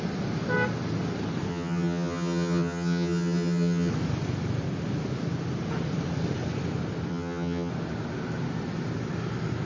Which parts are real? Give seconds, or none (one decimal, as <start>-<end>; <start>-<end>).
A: 0.0-1.5; 3.9-7.1; 7.7-9.7